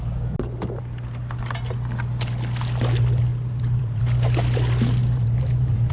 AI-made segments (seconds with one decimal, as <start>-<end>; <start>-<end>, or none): 3.3-4.0; 5.0-5.9